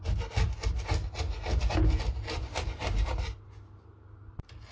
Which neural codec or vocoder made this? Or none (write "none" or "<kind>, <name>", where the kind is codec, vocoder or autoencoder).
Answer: none